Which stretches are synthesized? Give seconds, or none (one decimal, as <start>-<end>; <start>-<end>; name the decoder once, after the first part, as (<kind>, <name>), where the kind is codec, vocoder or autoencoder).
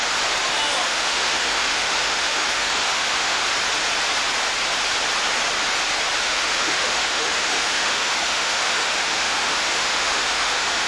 0.8-3.4 (autoencoder, DAC-VAE); 6.2-10.9